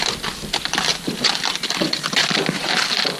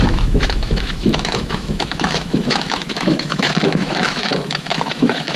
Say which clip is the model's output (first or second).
second